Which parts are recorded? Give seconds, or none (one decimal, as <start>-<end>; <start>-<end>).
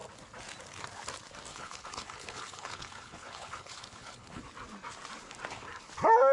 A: 0.0-1.5; 4.4-6.3